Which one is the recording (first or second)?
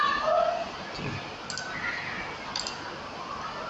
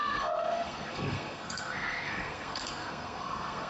first